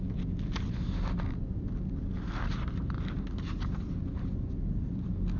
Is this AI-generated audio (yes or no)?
no